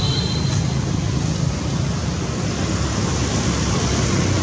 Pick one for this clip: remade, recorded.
recorded